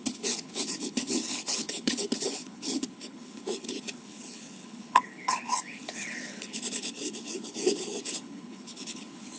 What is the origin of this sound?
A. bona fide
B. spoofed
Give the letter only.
B